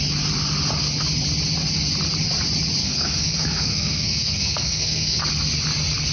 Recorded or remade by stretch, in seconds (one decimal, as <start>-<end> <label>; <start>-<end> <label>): 0.0-2.8 recorded; 2.8-5.2 remade; 5.2-6.1 recorded